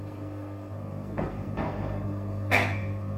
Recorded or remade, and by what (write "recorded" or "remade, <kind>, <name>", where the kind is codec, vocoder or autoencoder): remade, codec, SNAC